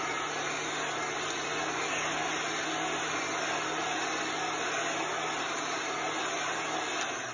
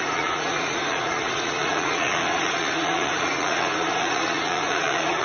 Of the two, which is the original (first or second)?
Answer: first